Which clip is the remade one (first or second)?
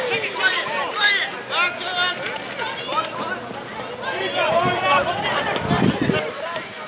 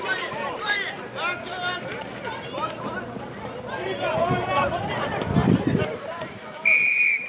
second